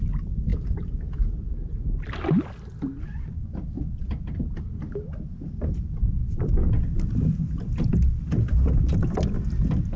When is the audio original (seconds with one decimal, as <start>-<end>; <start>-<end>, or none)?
0.0-10.0